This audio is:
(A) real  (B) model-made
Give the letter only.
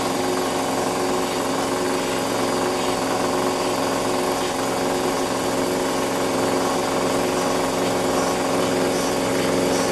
A